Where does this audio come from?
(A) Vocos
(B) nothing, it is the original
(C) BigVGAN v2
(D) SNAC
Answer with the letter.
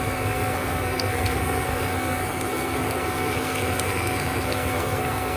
D